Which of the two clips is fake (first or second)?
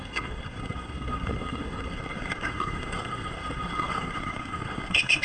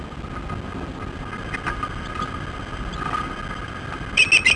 first